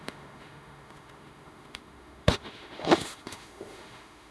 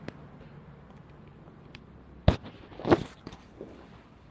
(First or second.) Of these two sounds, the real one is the second